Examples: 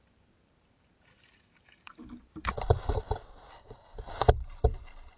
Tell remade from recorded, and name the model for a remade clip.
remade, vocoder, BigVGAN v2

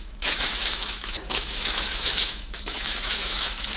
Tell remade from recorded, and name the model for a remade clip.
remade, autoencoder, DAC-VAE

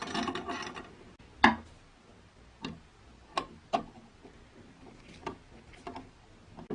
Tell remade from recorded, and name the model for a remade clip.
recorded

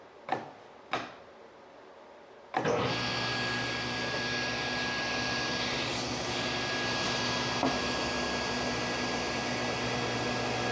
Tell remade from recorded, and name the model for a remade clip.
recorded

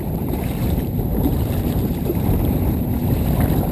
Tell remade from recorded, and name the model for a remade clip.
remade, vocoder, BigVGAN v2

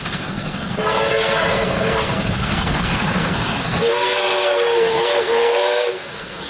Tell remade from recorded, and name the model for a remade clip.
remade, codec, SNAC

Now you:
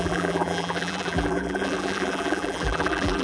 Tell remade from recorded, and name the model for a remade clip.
remade, vocoder, BigVGAN v2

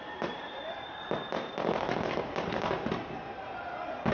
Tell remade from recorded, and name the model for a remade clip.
recorded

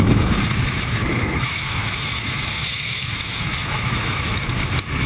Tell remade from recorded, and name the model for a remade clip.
remade, autoencoder, DAC-VAE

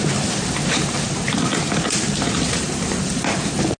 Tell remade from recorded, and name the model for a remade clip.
recorded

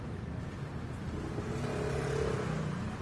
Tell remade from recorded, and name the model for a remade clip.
recorded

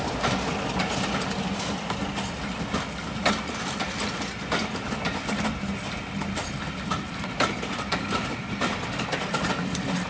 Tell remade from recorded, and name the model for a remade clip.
recorded